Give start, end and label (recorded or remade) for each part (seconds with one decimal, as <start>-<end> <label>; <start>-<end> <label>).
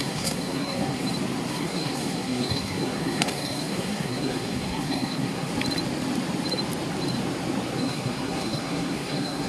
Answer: 0.0-1.0 remade; 1.0-1.5 recorded; 1.5-5.5 remade; 5.5-7.8 recorded; 7.8-9.5 remade